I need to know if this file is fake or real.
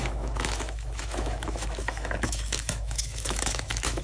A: fake